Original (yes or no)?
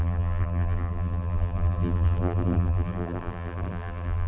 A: no